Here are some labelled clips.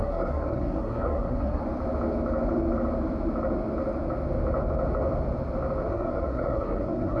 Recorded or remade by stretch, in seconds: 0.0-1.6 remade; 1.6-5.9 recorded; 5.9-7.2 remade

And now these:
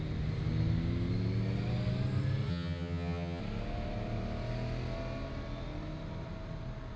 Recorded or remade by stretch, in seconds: 0.0-2.5 recorded; 2.5-3.4 remade; 3.4-7.0 recorded

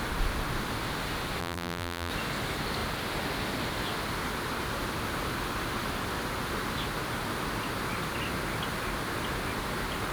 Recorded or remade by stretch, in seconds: 0.0-1.4 recorded; 1.4-2.1 remade; 2.1-10.1 recorded

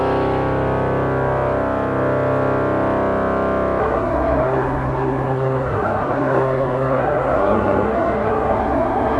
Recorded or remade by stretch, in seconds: 0.0-3.8 recorded; 3.8-9.2 remade

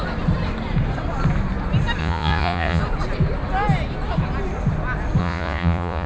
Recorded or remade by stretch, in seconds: 0.0-2.0 recorded; 2.0-2.8 remade; 2.8-5.2 recorded; 5.2-6.1 remade